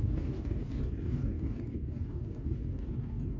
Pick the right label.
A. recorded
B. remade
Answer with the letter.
B